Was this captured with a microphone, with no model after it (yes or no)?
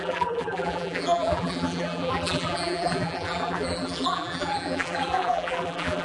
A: no